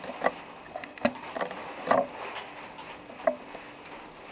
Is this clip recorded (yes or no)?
yes